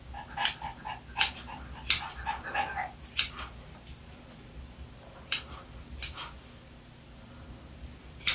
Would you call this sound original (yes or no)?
yes